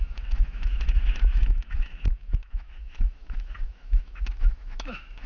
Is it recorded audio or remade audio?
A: remade